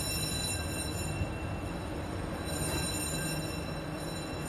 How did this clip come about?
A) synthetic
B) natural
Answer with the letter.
B